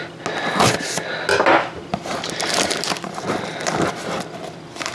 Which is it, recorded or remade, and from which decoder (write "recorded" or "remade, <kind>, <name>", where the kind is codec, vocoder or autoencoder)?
recorded